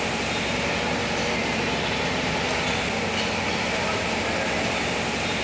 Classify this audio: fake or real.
real